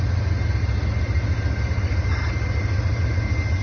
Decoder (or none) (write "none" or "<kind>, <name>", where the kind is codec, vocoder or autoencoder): none